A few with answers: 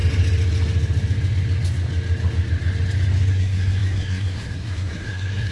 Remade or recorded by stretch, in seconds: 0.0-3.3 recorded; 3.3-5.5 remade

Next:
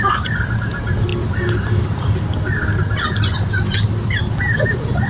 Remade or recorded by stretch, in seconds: 0.0-5.1 recorded

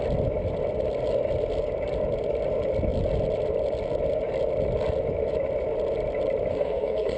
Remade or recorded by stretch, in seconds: 0.0-6.5 recorded; 6.5-7.2 remade